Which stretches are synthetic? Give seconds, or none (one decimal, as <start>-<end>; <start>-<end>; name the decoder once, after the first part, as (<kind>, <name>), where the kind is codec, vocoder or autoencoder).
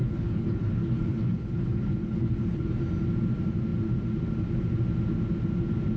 0.0-2.7 (codec, HILCodec)